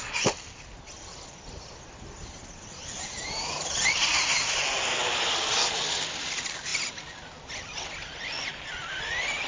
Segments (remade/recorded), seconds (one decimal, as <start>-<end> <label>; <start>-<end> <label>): 0.0-9.5 recorded